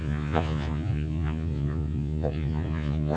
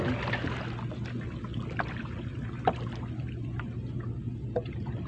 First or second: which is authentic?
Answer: second